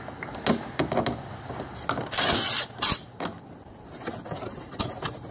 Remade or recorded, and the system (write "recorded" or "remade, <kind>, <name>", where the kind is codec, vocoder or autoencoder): recorded